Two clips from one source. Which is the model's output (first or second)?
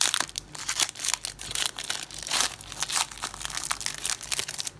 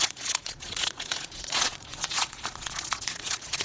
second